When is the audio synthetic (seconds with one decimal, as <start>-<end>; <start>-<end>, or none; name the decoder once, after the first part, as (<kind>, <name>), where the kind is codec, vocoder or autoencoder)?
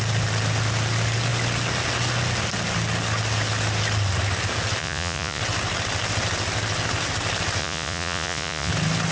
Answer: 4.8-5.4 (vocoder, Vocos); 7.6-8.7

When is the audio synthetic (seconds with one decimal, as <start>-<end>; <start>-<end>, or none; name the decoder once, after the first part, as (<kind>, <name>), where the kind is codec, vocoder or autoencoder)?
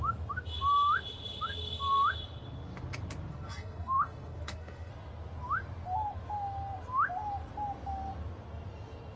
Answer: 3.3-4.9 (codec, SNAC)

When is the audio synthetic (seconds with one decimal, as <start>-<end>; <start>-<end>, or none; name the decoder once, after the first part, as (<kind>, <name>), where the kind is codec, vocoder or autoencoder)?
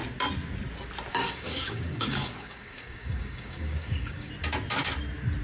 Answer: 1.1-4.3 (codec, DAC)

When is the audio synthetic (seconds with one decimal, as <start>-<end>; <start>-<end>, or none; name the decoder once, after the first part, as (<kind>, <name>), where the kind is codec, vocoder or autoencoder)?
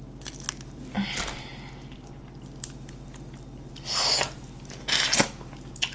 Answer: none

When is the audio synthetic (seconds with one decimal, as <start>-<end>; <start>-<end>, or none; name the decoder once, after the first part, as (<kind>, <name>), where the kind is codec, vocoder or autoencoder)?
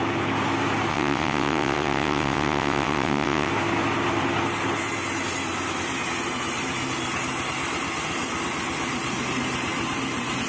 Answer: 0.9-3.5 (vocoder, WaveNeXt)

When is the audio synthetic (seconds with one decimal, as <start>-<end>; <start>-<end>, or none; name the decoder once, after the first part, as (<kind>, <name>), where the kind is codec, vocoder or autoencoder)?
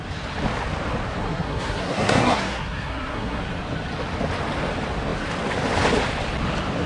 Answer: 1.2-3.4 (codec, SNAC)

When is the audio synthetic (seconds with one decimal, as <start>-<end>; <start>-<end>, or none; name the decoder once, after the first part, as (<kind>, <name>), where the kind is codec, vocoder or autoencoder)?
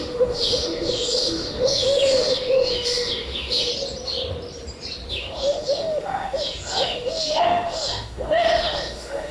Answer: 0.0-3.7 (autoencoder, DAC-VAE); 5.1-9.3